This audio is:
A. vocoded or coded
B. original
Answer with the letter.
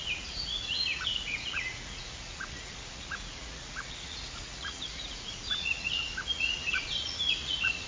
A